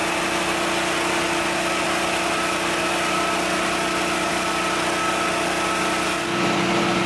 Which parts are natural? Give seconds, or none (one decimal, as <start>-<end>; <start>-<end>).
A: 0.0-7.1